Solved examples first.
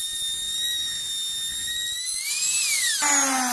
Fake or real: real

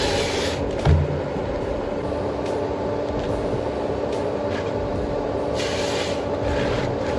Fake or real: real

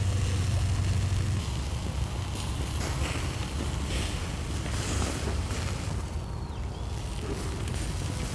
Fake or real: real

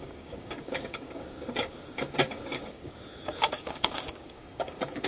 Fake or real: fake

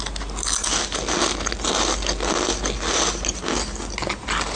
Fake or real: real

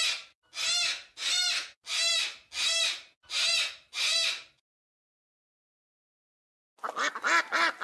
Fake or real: real